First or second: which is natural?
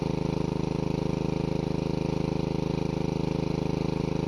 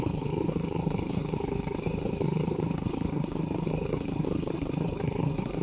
first